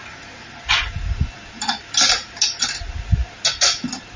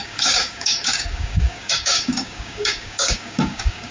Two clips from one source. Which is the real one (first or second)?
first